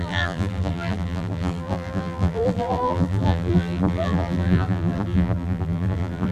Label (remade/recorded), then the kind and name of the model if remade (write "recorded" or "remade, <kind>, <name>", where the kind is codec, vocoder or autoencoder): remade, vocoder, BigVGAN v2